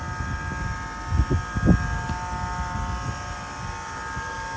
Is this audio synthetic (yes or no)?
no